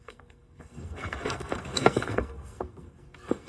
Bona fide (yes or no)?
no